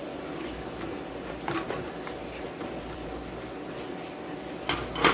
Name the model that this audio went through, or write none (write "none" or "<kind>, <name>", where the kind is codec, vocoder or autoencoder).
none